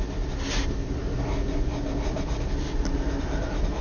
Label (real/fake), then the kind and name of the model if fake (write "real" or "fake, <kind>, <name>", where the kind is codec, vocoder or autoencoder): real